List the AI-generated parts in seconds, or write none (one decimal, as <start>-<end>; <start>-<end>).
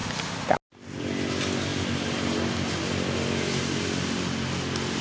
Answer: none